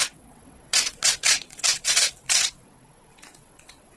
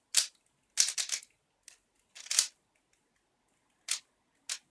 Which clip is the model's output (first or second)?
first